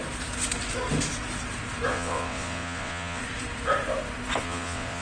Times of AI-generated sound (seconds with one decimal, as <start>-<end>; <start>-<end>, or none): 1.9-3.2; 4.4-5.0